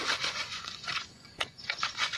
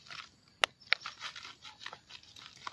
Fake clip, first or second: first